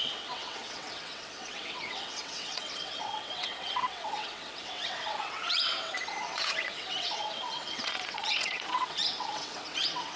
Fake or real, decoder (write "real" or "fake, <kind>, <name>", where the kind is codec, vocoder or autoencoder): fake, vocoder, WaveNeXt